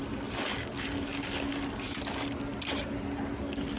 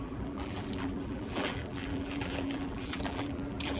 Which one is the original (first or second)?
first